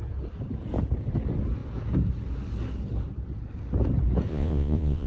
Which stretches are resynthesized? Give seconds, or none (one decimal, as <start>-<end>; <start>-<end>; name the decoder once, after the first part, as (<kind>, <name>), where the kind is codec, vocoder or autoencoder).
4.3-5.1 (vocoder, Vocos)